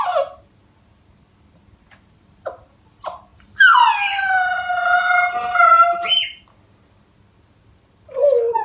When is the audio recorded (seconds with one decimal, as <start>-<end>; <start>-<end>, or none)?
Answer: 0.0-8.6